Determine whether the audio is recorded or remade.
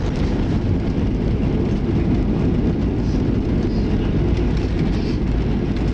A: recorded